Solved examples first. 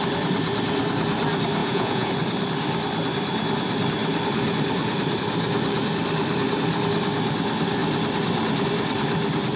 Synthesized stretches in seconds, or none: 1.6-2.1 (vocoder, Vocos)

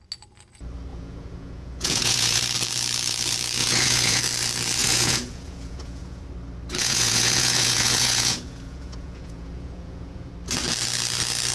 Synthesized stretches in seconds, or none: 0.9-2.4 (vocoder, Vocos); 3.6-4.2; 4.8-6.2; 6.8-10.3

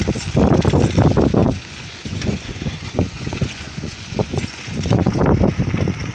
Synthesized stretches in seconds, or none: 1.4-5.1 (vocoder, Vocos)

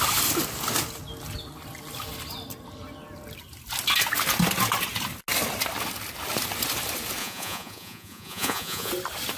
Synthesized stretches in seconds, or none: 7.2-8.9 (vocoder, Vocos)

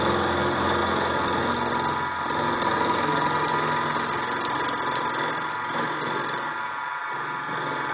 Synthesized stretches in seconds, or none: none

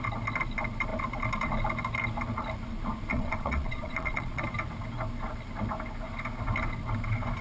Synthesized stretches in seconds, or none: 3.1-4.4 (vocoder, Vocos)

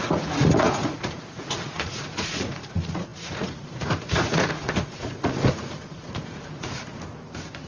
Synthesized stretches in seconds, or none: 0.0-6.8 (vocoder, Vocos)